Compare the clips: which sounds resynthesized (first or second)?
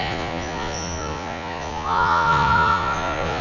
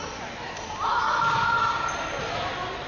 first